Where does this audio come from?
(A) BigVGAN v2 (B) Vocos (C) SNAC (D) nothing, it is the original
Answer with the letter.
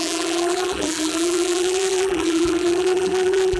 A